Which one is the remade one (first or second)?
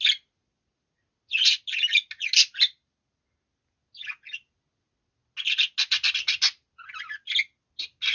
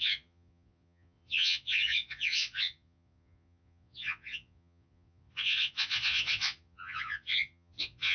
second